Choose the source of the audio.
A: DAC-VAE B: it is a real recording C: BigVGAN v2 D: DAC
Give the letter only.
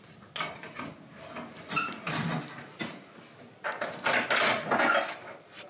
B